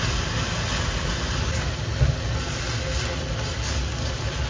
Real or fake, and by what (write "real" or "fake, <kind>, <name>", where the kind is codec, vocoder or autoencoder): real